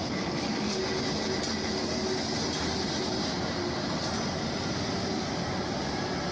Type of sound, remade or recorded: recorded